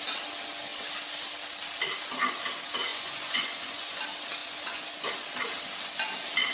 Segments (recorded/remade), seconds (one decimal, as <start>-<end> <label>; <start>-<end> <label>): 0.0-2.9 recorded; 2.9-4.0 remade; 4.0-4.4 recorded; 4.4-5.1 remade; 5.1-6.5 recorded